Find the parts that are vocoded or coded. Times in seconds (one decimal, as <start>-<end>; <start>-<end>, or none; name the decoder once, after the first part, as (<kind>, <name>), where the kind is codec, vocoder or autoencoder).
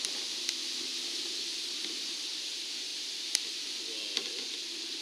2.9-3.6 (vocoder, BigVGAN v2)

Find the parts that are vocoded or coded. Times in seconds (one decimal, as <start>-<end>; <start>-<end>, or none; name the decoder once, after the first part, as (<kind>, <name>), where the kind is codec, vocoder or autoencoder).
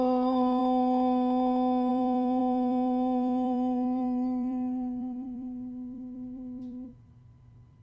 0.0-0.6 (vocoder, BigVGAN v2); 1.9-7.8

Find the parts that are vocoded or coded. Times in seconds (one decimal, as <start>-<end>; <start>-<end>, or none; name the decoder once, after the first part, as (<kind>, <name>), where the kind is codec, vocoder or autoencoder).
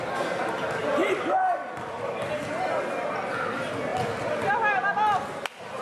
1.0-1.7 (vocoder, BigVGAN v2)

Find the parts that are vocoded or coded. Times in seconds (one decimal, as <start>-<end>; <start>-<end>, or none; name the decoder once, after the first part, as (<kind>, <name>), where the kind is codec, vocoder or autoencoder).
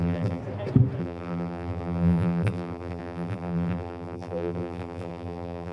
0.0-0.4 (vocoder, BigVGAN v2); 1.0-5.7